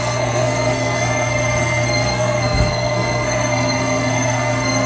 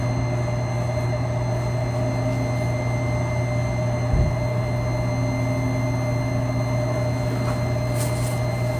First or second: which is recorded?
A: second